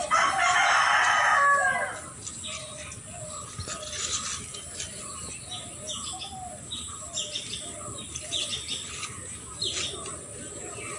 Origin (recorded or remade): recorded